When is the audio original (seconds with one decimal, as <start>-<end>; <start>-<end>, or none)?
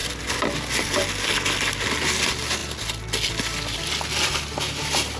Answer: 0.0-5.2